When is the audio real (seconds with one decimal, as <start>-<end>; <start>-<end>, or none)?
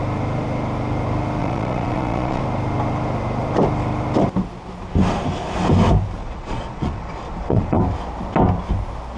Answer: 0.0-1.4; 2.4-6.2; 7.8-9.2